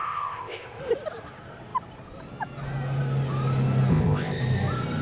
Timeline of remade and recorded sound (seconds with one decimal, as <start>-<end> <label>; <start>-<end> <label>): 0.0-0.8 remade; 0.8-3.9 recorded; 3.9-4.4 remade; 4.4-5.0 recorded

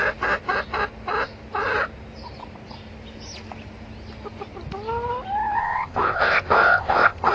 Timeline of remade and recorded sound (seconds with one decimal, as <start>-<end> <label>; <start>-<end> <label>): 0.0-5.6 recorded; 5.6-7.3 remade

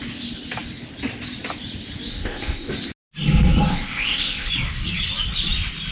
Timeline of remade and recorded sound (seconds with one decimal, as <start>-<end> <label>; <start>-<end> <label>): 0.0-2.1 recorded; 2.1-2.7 remade; 2.7-3.7 recorded; 3.7-4.5 remade; 4.5-5.9 recorded

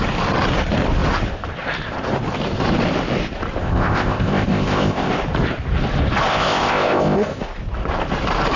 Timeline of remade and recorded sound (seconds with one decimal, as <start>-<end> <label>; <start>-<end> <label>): 0.0-3.6 recorded; 3.6-5.1 remade; 5.1-6.3 recorded; 6.3-7.4 remade; 7.4-8.6 recorded

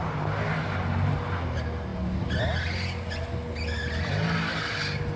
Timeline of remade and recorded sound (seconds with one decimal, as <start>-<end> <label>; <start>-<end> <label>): 0.0-5.2 recorded

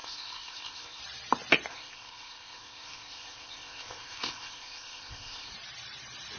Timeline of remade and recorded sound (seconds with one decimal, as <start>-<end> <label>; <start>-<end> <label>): 0.0-1.0 remade; 1.0-1.7 recorded; 1.7-5.5 remade; 5.5-6.4 recorded

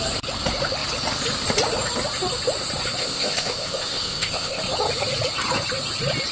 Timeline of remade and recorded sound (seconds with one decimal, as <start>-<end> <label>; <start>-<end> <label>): 0.0-3.0 recorded; 3.0-4.6 remade; 4.6-6.3 recorded

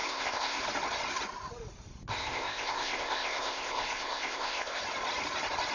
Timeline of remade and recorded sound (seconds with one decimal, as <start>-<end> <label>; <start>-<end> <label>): 0.0-0.6 remade; 0.6-2.1 recorded; 2.1-4.8 remade; 4.8-5.7 recorded